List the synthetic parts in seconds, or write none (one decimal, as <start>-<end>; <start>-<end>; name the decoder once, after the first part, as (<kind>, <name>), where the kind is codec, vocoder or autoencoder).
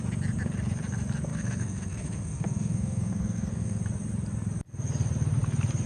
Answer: 1.3-3.8 (codec, SNAC)